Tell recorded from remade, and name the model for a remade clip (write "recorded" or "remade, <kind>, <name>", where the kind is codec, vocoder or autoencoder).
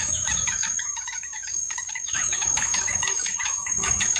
remade, autoencoder, DAC-VAE